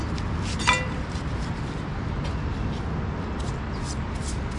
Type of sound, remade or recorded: recorded